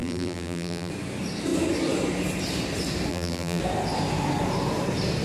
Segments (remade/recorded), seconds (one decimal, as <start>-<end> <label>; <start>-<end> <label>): 0.0-0.9 remade; 0.9-3.1 recorded; 3.1-3.6 remade; 3.6-5.2 recorded